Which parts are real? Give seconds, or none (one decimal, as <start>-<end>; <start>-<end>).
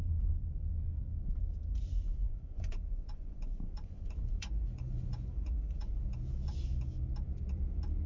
0.0-2.2; 5.9-8.1